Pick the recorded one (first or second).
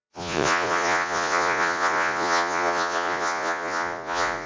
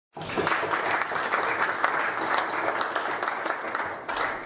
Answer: second